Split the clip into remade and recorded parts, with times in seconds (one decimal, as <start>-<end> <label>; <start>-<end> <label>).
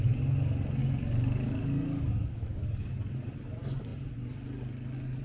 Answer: 0.0-0.8 recorded; 0.8-2.7 remade; 2.7-5.2 recorded